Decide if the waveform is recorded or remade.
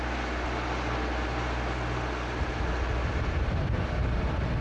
recorded